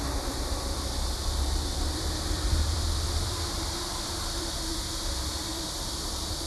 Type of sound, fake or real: fake